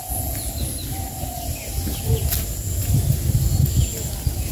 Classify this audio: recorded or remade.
recorded